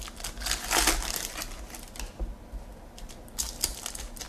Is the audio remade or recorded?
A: recorded